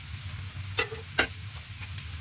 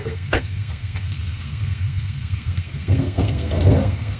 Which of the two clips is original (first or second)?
first